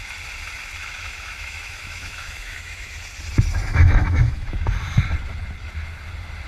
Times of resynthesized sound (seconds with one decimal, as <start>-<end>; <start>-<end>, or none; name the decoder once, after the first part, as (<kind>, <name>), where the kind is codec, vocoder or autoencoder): 0.8-2.9 (autoencoder, DAC-VAE); 3.7-4.6